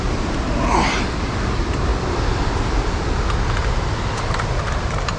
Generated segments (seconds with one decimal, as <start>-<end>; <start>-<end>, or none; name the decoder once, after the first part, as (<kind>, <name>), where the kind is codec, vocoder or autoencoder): 0.0-1.9 (vocoder, BigVGAN v2); 4.2-5.2